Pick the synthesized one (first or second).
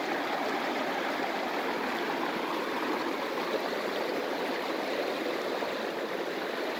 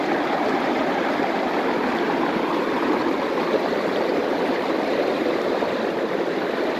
second